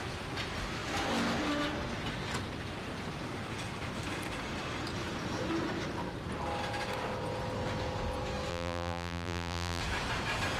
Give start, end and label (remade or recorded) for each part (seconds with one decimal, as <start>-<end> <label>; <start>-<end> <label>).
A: 0.0-8.5 recorded; 8.5-9.8 remade; 9.8-10.6 recorded